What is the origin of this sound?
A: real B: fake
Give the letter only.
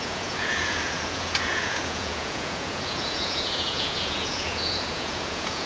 B